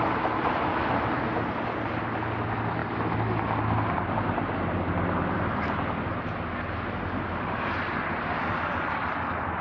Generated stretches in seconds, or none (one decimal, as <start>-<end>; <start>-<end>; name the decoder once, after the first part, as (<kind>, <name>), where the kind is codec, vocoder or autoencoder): none